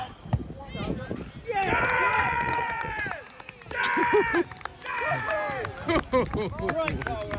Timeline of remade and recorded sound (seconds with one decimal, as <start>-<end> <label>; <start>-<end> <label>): 0.0-2.1 recorded; 2.1-3.0 remade; 3.0-7.4 recorded